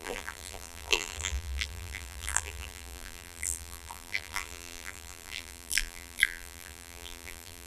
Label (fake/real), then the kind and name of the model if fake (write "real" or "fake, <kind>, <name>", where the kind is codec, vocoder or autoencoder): fake, vocoder, BigVGAN v2